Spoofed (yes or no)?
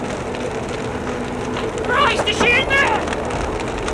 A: no